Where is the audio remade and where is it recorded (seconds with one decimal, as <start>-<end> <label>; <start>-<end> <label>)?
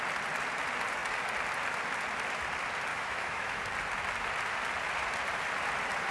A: 0.0-2.9 recorded; 2.9-3.6 remade; 3.6-6.1 recorded